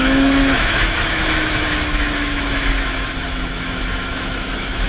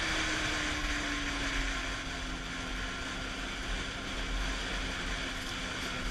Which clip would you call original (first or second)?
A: second